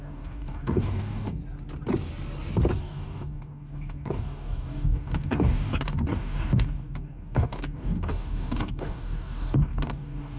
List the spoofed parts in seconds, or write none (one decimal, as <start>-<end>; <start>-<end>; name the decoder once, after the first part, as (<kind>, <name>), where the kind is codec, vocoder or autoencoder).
0.0-1.4 (codec, DAC); 2.8-10.4